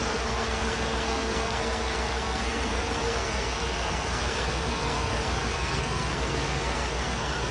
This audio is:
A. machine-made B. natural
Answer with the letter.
A